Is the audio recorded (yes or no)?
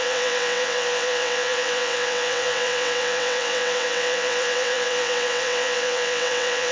no